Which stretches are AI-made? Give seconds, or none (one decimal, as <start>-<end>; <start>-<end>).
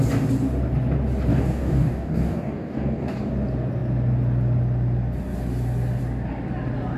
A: 1.3-3.3